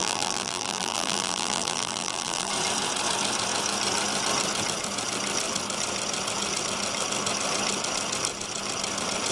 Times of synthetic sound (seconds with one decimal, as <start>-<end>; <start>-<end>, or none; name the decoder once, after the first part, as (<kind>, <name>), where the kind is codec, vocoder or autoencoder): 0.0-2.5 (vocoder, BigVGAN v2)